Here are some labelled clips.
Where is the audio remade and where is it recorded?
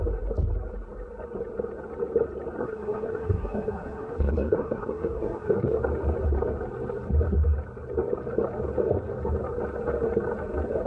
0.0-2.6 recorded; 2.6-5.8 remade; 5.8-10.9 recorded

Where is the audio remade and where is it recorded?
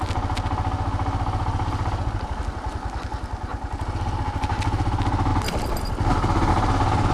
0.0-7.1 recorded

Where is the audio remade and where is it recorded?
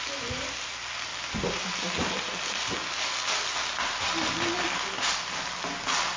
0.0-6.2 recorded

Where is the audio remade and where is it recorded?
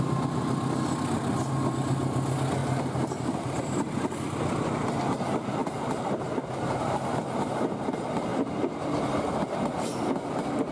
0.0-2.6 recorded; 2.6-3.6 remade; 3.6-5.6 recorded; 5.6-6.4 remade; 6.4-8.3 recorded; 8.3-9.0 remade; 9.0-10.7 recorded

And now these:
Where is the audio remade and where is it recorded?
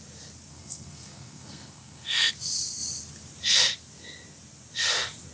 0.0-0.5 recorded; 0.5-2.3 remade; 2.3-5.3 recorded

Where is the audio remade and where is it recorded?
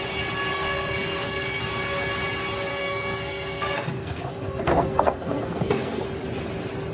0.0-0.5 recorded; 0.5-1.6 remade; 1.6-2.7 recorded; 2.7-6.0 remade; 6.0-6.9 recorded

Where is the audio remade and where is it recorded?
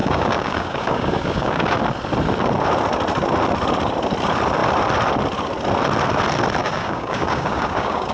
0.0-1.7 remade; 1.7-6.6 recorded; 6.6-8.1 remade